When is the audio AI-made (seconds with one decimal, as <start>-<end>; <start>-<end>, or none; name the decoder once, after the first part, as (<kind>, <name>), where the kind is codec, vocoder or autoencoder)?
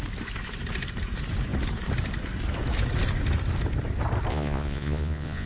4.3-5.5 (vocoder, Vocos)